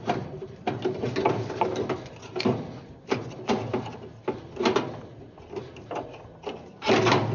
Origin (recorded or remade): recorded